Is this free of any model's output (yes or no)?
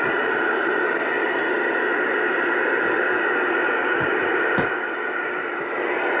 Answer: yes